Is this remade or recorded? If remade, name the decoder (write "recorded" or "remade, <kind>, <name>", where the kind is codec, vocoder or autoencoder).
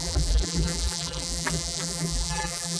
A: remade, vocoder, BigVGAN v2